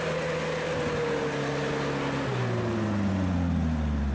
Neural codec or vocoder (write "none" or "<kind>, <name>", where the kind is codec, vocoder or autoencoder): none